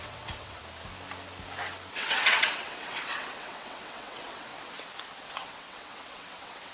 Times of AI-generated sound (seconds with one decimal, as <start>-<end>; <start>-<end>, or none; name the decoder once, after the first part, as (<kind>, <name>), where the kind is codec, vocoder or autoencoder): 0.0-0.6 (vocoder, WaveNeXt); 1.9-4.5; 5.2-6.7